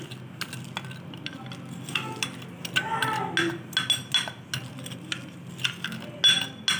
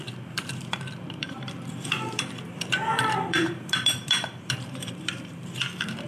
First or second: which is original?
first